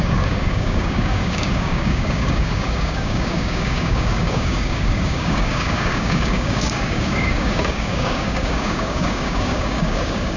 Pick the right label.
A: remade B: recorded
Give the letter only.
A